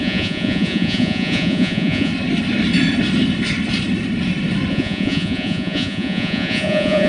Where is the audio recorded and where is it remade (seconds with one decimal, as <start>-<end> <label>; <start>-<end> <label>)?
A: 0.0-2.1 remade; 2.1-4.7 recorded; 4.7-7.1 remade